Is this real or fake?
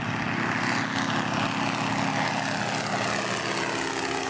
real